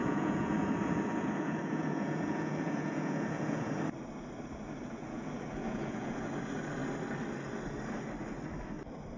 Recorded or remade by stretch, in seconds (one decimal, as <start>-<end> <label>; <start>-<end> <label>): 0.0-3.7 remade; 3.7-4.6 recorded; 4.6-6.2 remade; 6.2-9.2 recorded